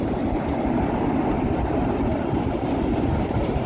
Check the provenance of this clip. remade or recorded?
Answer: recorded